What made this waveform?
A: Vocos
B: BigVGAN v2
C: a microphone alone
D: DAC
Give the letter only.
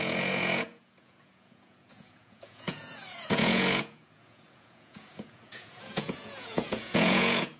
A